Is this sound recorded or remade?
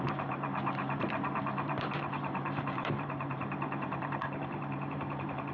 remade